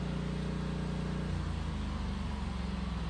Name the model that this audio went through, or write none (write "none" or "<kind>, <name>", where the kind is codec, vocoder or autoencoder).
none